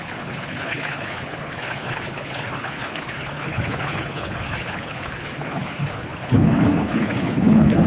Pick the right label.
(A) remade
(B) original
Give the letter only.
A